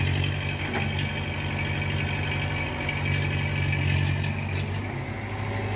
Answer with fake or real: real